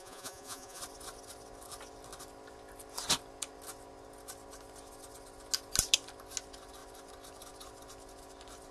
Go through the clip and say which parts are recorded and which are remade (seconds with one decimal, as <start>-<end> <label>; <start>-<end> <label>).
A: 0.0-0.8 remade; 0.8-8.7 recorded